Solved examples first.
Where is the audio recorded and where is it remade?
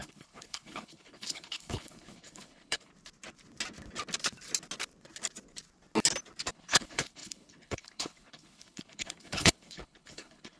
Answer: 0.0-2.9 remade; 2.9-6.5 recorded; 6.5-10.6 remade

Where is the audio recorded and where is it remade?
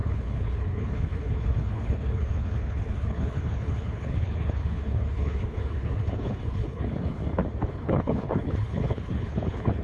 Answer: 0.0-7.2 remade; 7.2-7.7 recorded; 7.7-9.8 remade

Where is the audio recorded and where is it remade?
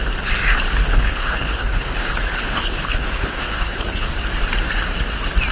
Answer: 0.0-0.8 recorded; 0.8-4.1 remade; 4.1-5.5 recorded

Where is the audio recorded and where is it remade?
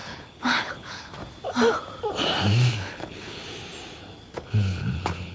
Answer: 0.0-1.2 remade; 1.2-2.7 recorded; 2.7-3.4 remade; 3.4-4.3 recorded; 4.3-5.3 remade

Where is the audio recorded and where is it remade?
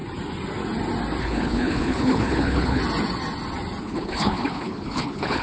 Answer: 0.0-1.2 recorded; 1.2-2.8 remade; 2.8-3.8 recorded; 3.8-5.4 remade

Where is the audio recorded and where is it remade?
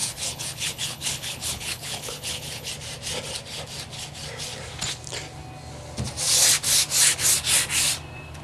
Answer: 0.0-2.7 remade; 2.7-8.4 recorded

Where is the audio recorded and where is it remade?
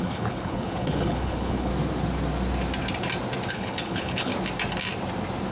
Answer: 0.0-1.7 remade; 1.7-3.5 recorded; 3.5-4.3 remade; 4.3-5.5 recorded